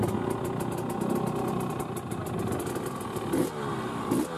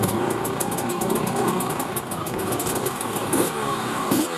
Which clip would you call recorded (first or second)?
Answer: first